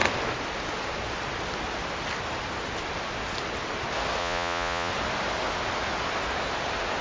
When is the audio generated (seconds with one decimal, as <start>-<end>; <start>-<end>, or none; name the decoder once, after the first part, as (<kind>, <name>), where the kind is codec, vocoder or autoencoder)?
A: 4.2-4.9 (vocoder, Vocos)